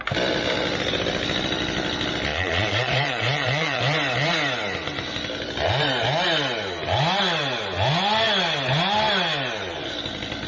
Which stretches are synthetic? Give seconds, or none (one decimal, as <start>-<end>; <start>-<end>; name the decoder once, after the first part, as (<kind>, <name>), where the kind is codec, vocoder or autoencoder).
2.3-3.8 (vocoder, Vocos)